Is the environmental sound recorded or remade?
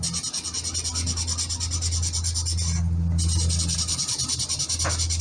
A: recorded